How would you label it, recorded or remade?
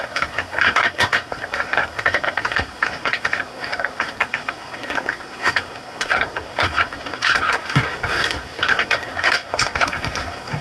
remade